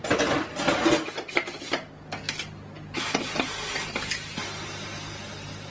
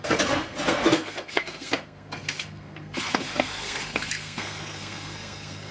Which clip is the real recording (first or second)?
first